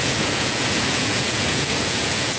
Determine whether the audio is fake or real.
fake